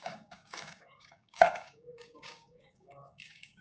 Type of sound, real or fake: fake